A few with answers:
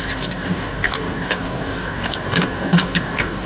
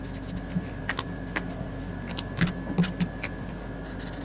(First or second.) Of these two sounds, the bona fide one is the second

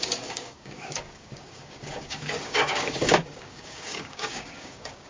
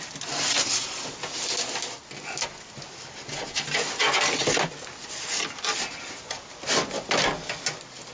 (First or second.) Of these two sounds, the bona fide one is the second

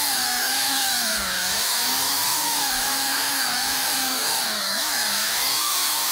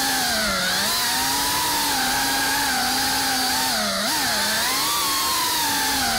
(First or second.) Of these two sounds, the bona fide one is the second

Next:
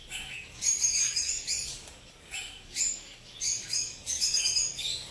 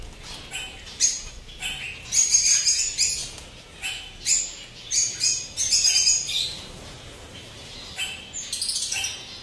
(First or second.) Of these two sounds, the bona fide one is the second